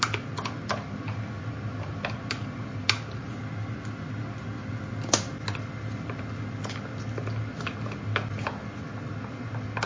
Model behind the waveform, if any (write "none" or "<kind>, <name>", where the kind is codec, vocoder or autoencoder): none